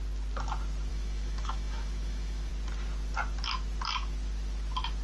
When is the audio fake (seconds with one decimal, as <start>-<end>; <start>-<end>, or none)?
0.9-2.5